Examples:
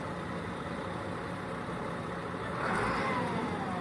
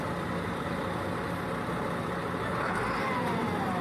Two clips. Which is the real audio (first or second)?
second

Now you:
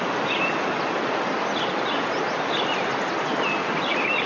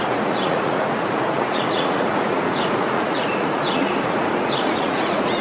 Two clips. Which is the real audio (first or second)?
first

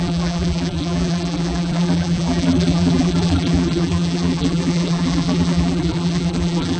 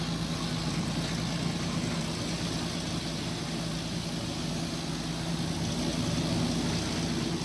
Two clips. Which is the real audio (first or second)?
second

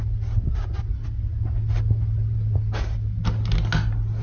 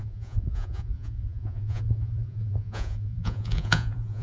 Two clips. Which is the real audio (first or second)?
first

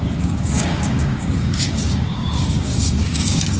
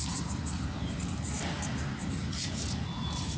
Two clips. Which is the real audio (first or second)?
second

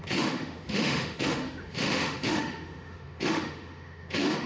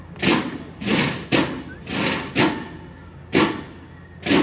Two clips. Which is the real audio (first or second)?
second